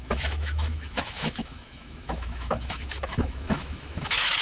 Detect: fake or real fake